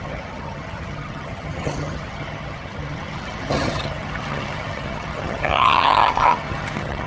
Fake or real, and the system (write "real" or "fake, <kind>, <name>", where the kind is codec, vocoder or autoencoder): fake, vocoder, HiFi-GAN